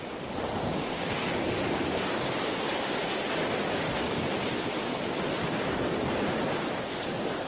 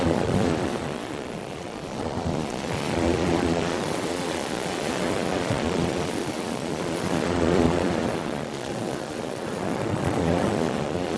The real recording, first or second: first